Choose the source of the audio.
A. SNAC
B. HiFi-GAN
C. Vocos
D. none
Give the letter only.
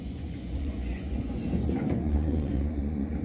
C